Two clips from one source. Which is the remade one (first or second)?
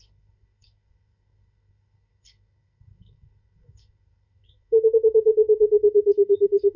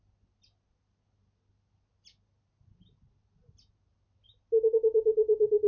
first